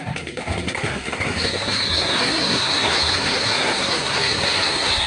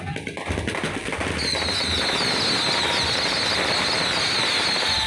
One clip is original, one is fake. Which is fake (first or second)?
first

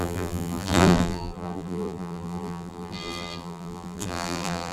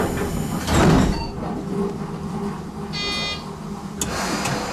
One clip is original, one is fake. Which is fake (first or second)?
first